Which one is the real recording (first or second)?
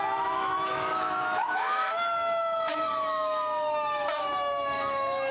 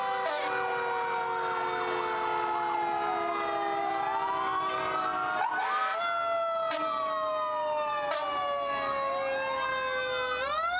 second